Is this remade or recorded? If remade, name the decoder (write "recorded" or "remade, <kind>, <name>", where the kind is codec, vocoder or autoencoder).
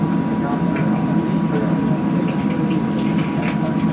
recorded